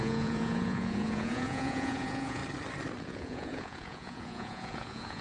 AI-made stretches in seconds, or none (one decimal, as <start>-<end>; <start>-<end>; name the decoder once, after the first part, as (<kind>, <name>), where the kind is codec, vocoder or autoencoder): 0.0-2.4 (vocoder, Vocos); 3.0-5.2